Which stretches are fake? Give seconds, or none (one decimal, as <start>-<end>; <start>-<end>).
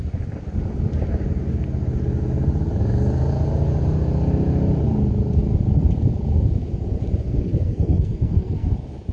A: 7.2-8.7